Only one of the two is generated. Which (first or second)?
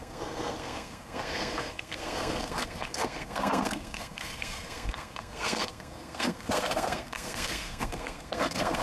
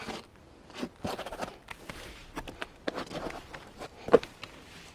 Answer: first